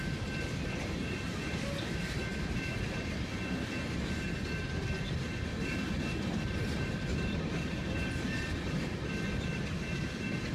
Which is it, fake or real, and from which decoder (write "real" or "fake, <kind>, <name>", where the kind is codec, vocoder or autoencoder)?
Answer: real